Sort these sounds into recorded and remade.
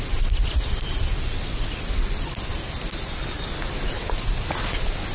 recorded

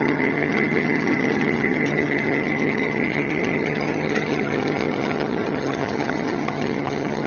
remade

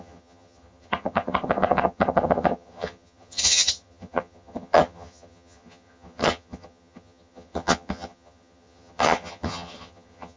remade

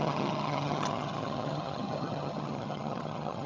remade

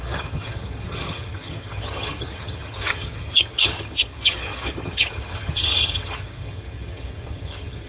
remade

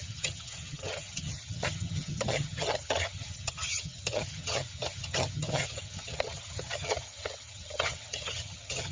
remade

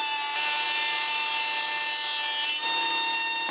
recorded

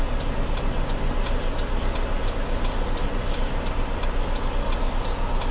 recorded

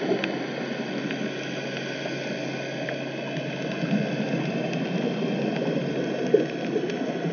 recorded